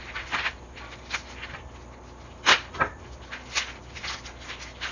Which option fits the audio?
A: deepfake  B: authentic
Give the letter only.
B